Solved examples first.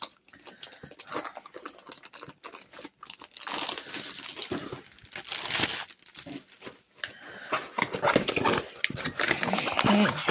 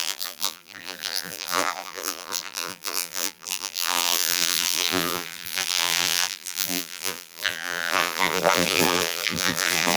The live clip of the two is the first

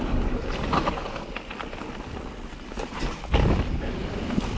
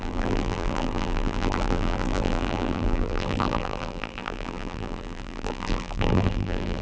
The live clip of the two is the first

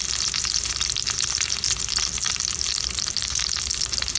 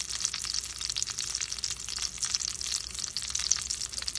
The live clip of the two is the second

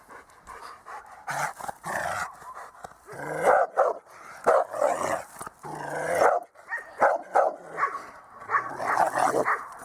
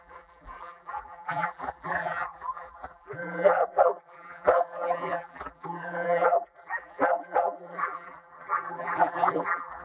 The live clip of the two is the first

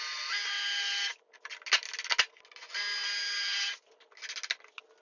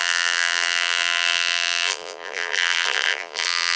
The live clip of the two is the first